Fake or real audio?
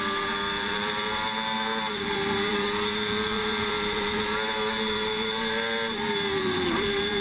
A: fake